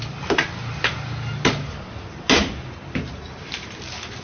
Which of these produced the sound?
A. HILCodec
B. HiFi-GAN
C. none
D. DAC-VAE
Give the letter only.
C